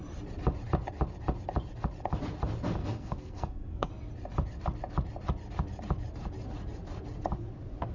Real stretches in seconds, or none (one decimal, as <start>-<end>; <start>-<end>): 0.0-2.8; 3.9-7.9